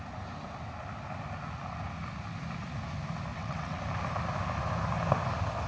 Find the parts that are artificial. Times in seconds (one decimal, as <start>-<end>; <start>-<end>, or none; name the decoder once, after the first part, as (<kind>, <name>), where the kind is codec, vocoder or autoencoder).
3.3-3.8 (vocoder, WaveNeXt)